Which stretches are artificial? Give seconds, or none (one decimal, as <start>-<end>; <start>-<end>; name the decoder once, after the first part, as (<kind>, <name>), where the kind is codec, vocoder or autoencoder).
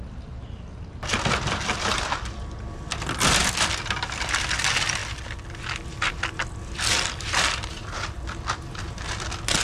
none